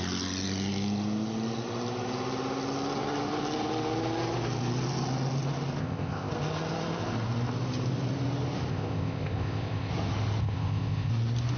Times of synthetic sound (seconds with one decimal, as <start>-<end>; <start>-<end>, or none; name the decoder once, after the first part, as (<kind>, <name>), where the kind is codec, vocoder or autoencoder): 5.8-6.3 (codec, ZipCodec); 8.7-9.9; 10.4-11.1